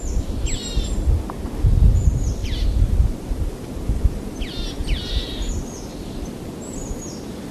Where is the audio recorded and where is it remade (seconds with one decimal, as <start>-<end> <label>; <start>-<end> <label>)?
0.0-2.4 recorded; 2.4-3.2 remade; 3.2-4.8 recorded; 4.8-6.6 remade; 6.6-7.5 recorded